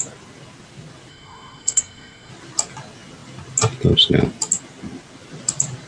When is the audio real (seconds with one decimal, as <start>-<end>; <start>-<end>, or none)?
0.0-1.1; 2.3-5.9